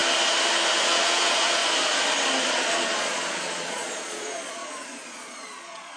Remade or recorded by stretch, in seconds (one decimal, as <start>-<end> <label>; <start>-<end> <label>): 0.0-0.8 recorded; 0.8-1.6 remade; 1.6-2.5 recorded; 2.5-6.0 remade